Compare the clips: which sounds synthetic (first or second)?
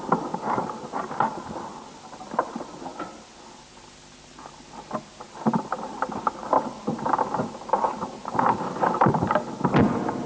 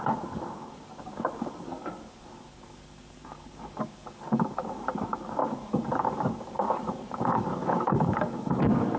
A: second